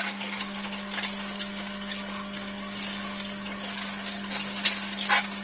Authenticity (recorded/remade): recorded